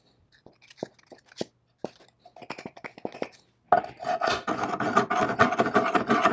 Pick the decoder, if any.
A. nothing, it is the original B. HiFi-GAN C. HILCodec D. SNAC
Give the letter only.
A